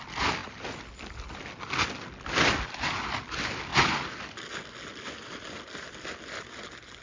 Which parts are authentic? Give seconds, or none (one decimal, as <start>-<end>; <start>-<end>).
0.0-7.0